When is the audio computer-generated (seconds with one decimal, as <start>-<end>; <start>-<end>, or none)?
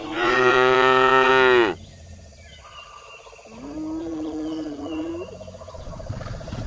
0.0-1.3; 4.0-5.1; 5.8-6.7